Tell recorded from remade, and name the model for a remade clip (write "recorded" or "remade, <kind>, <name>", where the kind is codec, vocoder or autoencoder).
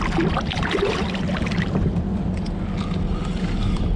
recorded